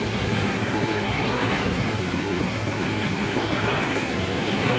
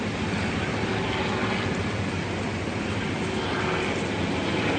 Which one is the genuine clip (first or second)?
second